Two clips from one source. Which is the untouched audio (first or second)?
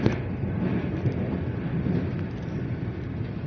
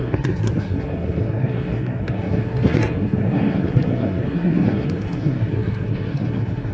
first